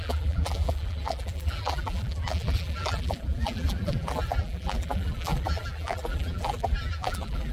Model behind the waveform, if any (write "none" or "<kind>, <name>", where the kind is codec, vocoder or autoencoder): vocoder, BigVGAN v2